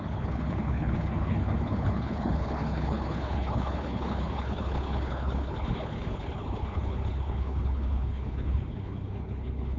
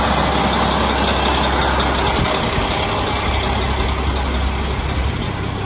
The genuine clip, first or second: second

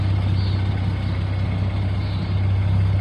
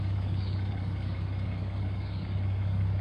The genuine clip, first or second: first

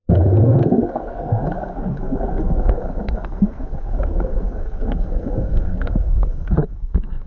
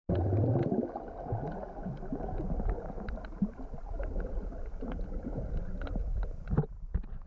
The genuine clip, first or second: second